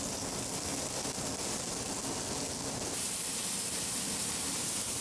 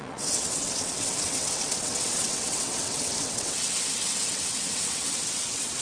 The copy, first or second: second